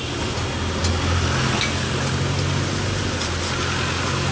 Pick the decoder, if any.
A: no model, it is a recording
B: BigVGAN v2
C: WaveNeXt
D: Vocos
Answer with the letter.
A